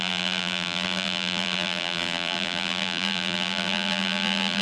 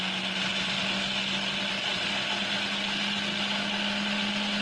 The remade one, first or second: first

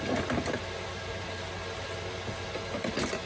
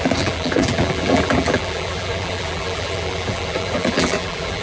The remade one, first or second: second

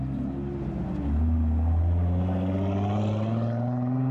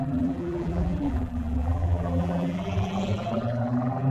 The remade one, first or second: second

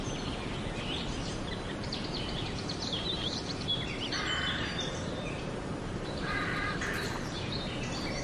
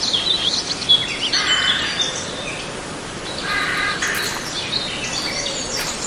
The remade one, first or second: first